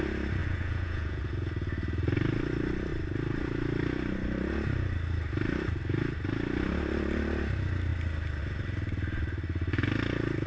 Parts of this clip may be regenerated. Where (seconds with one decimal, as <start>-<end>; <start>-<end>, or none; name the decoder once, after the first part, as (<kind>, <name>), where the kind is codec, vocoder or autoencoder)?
0.4-1.2 (vocoder, Vocos)